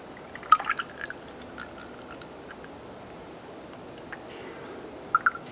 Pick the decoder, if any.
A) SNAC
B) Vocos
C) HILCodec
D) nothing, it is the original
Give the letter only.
D